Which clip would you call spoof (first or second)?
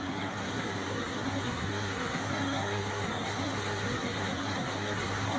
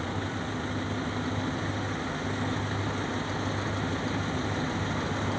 first